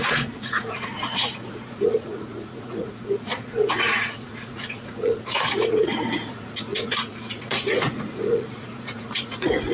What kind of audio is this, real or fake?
fake